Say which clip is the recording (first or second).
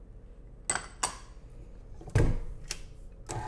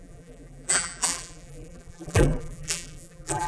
first